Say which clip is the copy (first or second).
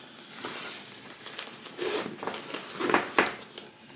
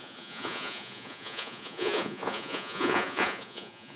second